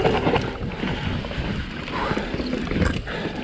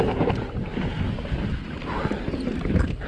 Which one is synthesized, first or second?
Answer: second